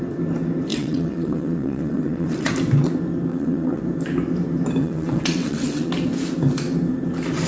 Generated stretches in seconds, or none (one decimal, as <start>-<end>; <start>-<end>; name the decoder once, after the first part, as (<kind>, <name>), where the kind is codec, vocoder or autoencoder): 0.7-2.5 (vocoder, WaveNeXt); 3.3-3.8; 4.8-5.9